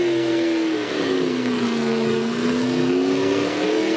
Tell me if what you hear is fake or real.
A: fake